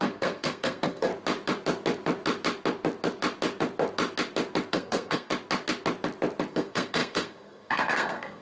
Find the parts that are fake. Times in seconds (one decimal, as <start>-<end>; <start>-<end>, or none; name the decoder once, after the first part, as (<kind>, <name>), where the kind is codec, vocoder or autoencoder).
0.0-1.1 (codec, SNAC); 4.7-5.3; 6.5-8.4